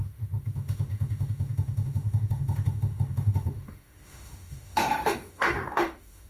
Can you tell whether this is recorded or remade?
remade